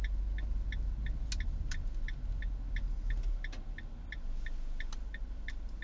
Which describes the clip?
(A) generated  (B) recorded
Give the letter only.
B